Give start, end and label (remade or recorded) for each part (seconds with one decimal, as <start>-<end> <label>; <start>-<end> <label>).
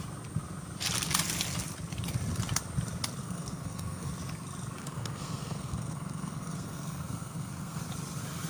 0.0-3.2 recorded; 3.2-4.1 remade; 4.1-4.8 recorded; 4.8-7.8 remade; 7.8-8.5 recorded